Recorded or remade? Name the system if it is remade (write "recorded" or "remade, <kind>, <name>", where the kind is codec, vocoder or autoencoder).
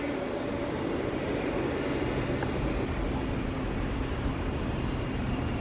recorded